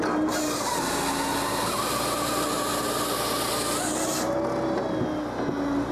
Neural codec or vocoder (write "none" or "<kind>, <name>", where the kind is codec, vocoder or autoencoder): none